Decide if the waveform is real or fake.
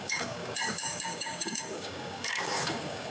fake